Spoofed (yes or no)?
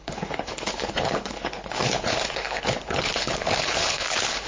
yes